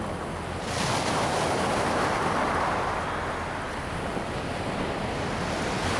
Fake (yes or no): no